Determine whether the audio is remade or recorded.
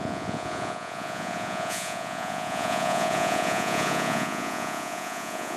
remade